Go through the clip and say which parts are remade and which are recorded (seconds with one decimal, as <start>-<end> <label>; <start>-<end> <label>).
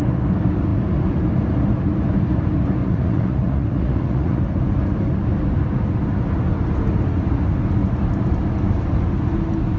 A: 0.0-2.8 recorded; 2.8-4.4 remade; 4.4-9.8 recorded